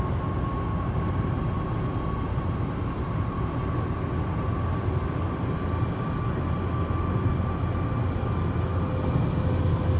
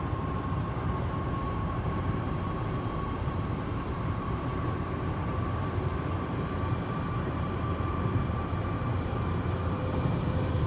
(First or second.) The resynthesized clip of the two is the second